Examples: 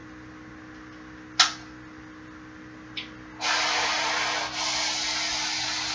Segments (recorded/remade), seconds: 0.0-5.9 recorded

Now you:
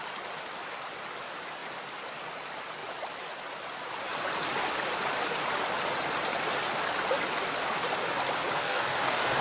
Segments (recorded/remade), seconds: 0.0-8.6 recorded; 8.6-9.4 remade

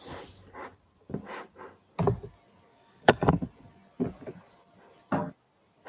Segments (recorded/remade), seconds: 0.0-2.7 recorded; 2.7-3.3 remade; 3.3-5.9 recorded

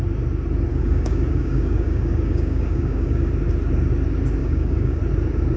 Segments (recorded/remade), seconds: 0.0-0.7 recorded; 0.7-3.3 remade; 3.3-4.4 recorded; 4.4-5.0 remade; 5.0-5.6 recorded

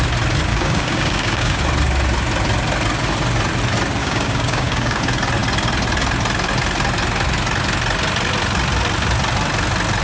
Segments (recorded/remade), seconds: 0.0-0.5 recorded; 0.5-1.6 remade; 1.6-4.0 recorded; 4.0-5.0 remade; 5.0-10.0 recorded

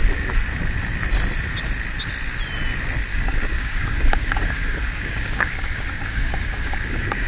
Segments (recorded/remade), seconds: 0.0-3.1 recorded; 3.1-7.3 remade

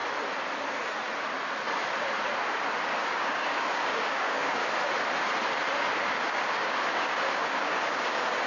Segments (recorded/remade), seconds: 0.0-2.8 recorded; 2.8-4.6 remade; 4.6-6.0 recorded; 6.0-8.5 remade

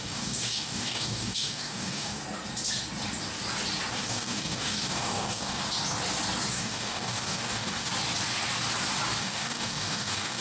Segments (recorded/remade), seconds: 0.0-2.2 remade; 2.2-3.9 recorded; 3.9-5.6 remade; 5.6-6.5 recorded; 6.5-7.9 remade; 7.9-9.2 recorded; 9.2-10.4 remade